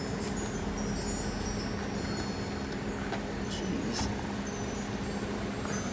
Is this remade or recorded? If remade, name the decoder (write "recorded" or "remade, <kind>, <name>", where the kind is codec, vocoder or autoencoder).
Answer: recorded